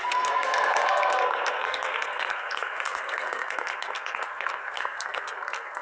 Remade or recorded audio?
remade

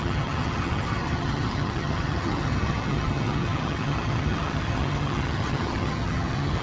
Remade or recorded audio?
remade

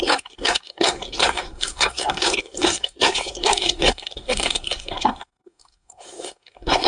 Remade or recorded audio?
remade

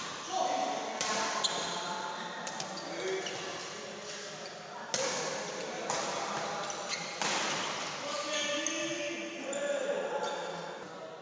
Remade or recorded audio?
recorded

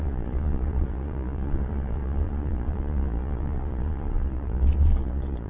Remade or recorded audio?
remade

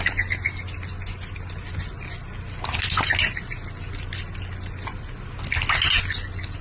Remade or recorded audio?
recorded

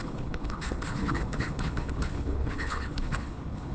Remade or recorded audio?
remade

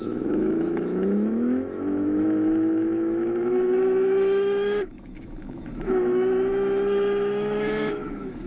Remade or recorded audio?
remade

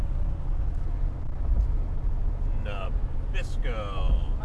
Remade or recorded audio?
recorded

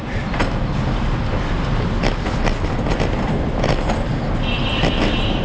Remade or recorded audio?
recorded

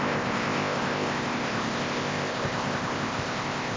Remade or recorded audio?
remade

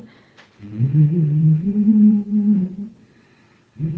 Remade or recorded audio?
remade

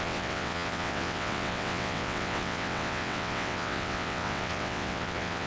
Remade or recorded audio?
remade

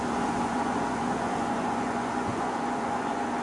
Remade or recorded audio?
remade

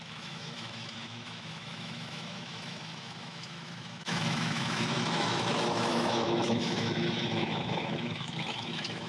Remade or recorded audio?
remade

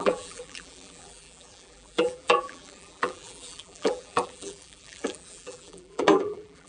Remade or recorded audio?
remade